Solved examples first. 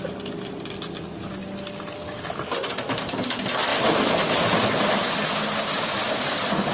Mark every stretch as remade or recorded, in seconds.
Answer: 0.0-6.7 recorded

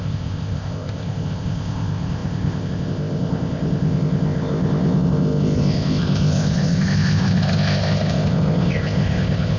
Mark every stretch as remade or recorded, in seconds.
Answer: 0.0-9.6 remade

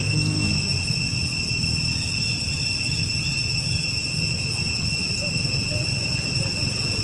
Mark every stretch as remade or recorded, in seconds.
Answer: 0.0-0.5 remade; 0.5-7.0 recorded

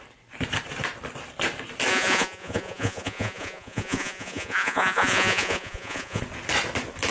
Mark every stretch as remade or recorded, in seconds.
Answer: 0.0-1.9 recorded; 1.9-6.2 remade; 6.2-7.1 recorded

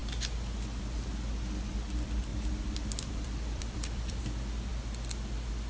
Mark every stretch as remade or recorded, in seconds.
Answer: 0.0-2.3 recorded; 2.3-4.2 remade; 4.2-5.7 recorded

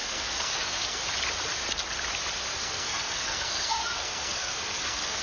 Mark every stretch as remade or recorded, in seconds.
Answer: 0.0-1.0 remade; 1.0-2.5 recorded; 2.5-5.2 remade

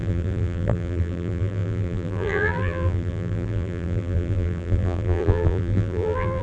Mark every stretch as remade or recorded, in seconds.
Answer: 0.0-6.4 remade

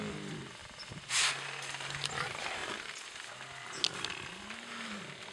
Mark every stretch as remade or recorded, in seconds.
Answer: 0.0-5.3 recorded